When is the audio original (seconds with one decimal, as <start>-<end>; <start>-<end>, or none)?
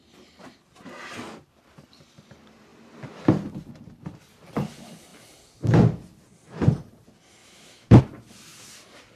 0.0-7.4; 8.0-9.2